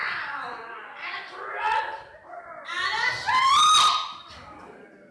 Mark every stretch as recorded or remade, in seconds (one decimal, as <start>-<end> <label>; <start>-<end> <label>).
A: 0.0-5.1 recorded